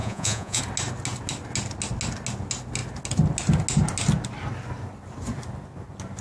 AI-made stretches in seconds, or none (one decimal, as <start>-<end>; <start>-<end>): 0.0-0.6